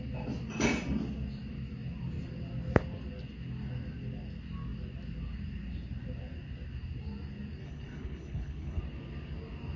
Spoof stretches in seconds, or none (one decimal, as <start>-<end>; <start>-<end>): 7.6-8.8

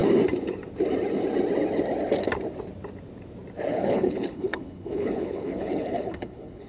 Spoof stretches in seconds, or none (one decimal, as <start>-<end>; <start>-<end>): 3.7-6.7